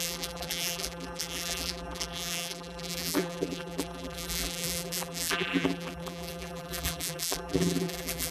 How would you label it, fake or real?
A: fake